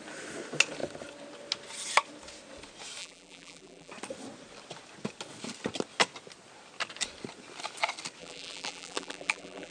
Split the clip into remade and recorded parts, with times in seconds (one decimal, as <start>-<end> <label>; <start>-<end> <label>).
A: 0.0-3.0 recorded; 3.0-3.9 remade; 3.9-8.2 recorded; 8.2-9.7 remade